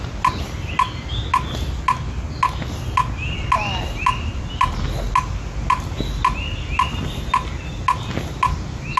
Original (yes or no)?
yes